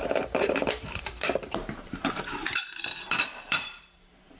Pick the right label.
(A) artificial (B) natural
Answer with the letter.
A